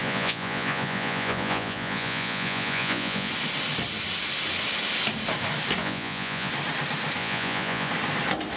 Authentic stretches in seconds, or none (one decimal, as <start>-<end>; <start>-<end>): 3.3-5.8; 6.5-7.2; 7.9-8.6